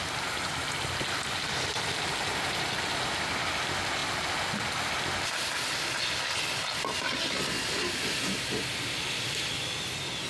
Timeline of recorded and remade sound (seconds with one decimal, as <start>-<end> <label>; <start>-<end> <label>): 0.0-10.3 recorded